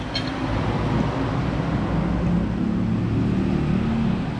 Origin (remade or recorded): recorded